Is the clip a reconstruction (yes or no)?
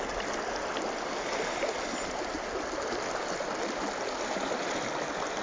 no